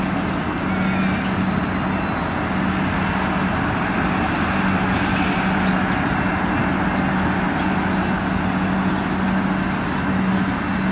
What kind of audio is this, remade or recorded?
recorded